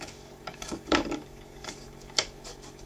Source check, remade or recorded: remade